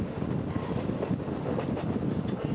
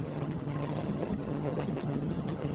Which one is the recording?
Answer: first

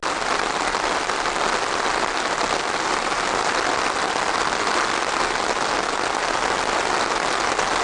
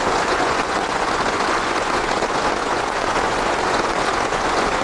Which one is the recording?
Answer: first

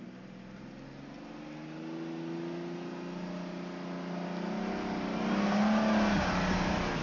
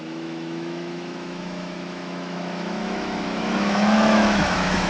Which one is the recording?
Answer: first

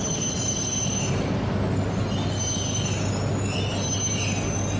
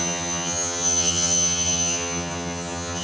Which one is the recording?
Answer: first